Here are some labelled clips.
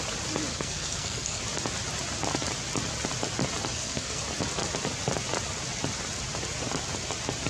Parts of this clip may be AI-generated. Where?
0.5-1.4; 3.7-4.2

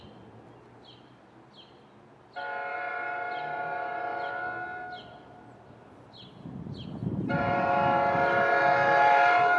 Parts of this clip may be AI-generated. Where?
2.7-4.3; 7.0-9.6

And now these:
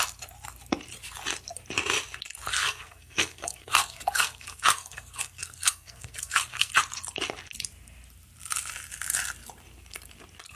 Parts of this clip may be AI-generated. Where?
2.5-6.7

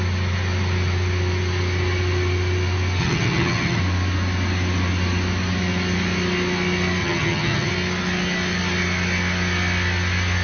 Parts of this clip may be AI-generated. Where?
3.0-3.8; 7.0-7.7